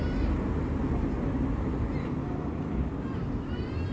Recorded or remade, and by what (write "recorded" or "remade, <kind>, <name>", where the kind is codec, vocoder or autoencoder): recorded